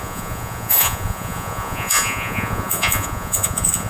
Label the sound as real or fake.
fake